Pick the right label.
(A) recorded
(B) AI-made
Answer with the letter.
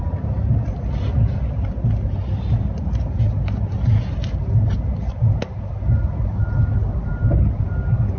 A